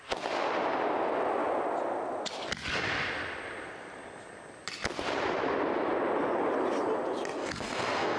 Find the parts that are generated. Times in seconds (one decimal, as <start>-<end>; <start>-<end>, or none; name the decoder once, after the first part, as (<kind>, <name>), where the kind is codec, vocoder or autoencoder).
7.4-8.2 (codec, SNAC)